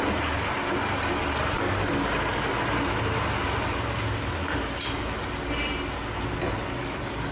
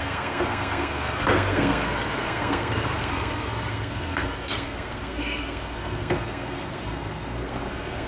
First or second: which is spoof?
second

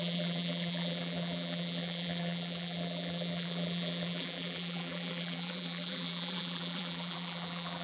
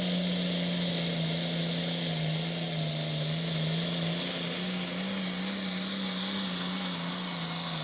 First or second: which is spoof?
first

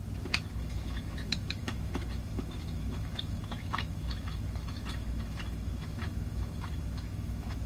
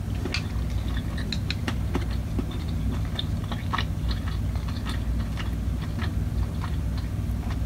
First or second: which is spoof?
first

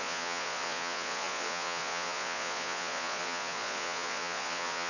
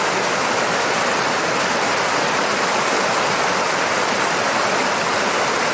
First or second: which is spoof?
first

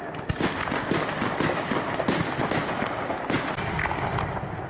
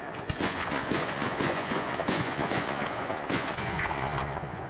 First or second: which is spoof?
second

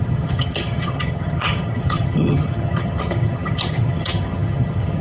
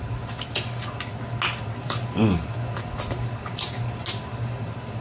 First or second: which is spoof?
first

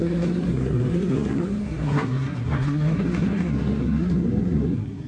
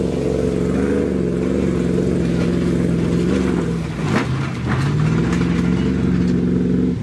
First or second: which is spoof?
first